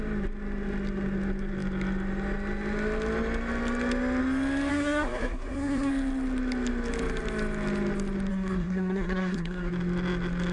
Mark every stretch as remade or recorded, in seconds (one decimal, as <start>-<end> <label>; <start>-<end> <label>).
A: 0.0-4.7 recorded; 4.7-5.9 remade; 5.9-8.3 recorded; 8.3-9.7 remade; 9.7-10.5 recorded